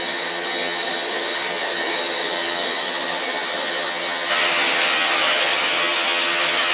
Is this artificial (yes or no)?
yes